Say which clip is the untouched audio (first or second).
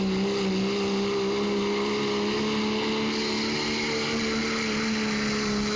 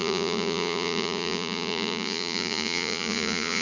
first